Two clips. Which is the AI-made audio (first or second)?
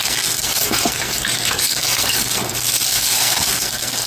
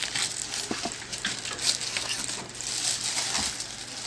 first